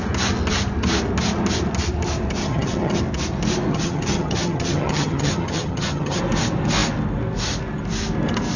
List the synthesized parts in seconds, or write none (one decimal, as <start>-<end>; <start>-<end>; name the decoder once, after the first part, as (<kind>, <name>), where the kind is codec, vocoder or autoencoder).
2.4-3.0 (vocoder, HiFi-GAN); 3.7-6.2